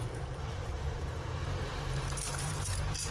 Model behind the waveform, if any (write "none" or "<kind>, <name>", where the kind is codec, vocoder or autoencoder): vocoder, BigVGAN v2